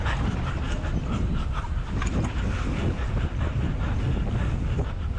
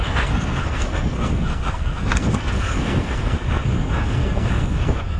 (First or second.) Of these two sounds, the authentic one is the first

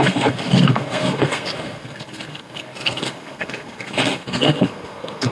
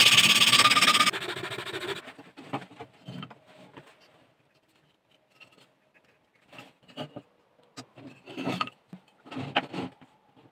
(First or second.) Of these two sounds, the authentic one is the second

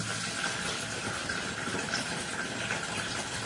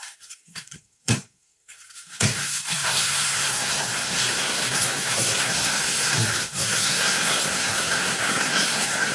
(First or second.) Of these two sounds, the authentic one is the first